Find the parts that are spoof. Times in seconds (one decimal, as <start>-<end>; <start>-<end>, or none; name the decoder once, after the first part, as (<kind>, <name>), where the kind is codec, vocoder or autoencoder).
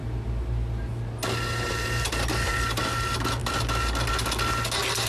none